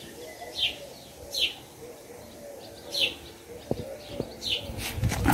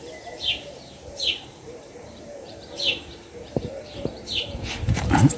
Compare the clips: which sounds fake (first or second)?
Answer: second